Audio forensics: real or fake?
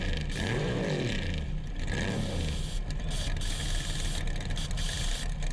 real